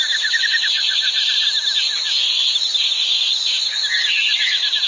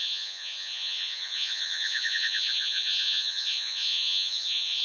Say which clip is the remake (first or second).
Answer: second